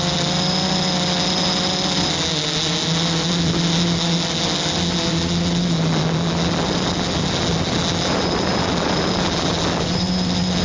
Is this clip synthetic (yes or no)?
no